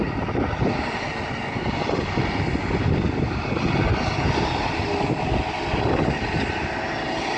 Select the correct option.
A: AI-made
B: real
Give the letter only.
B